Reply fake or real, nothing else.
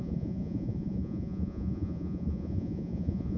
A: fake